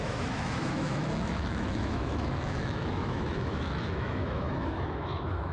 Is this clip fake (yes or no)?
yes